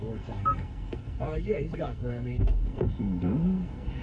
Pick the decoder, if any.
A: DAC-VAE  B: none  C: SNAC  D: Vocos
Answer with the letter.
C